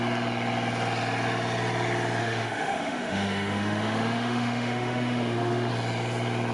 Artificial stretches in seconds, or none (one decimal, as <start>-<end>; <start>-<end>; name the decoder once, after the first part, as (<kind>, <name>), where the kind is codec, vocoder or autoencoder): 2.2-5.7 (autoencoder, DAC-VAE)